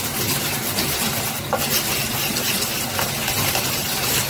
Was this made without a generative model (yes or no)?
yes